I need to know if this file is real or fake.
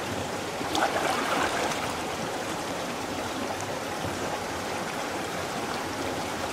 fake